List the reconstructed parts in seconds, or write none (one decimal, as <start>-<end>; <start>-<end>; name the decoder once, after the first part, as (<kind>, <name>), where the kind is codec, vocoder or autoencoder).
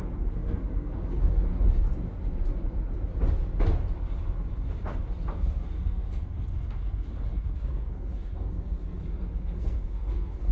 0.0-1.5 (codec, SNAC); 5.3-10.5